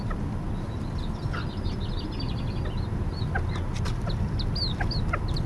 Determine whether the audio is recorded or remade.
recorded